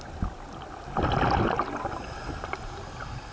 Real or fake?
real